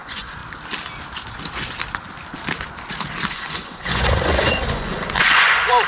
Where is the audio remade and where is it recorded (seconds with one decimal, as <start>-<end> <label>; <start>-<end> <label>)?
0.0-0.4 remade; 0.4-3.3 recorded; 3.3-5.9 remade